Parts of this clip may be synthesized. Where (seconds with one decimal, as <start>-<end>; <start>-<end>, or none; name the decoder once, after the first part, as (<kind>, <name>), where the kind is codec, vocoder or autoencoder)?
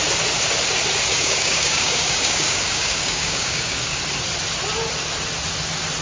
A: 1.1-4.0 (codec, DAC)